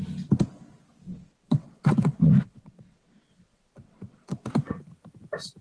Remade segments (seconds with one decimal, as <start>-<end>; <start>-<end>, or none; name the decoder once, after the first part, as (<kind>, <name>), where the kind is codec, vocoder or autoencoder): 1.1-4.5 (vocoder, WaveNeXt)